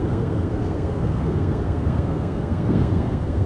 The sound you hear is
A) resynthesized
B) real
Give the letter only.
A